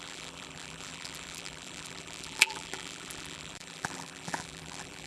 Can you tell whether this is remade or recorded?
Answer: remade